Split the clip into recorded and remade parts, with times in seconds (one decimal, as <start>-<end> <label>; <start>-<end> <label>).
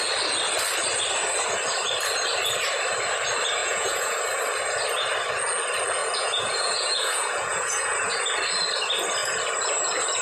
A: 0.0-3.6 recorded; 3.6-4.2 remade; 4.2-6.0 recorded; 6.0-8.2 remade; 8.2-10.2 recorded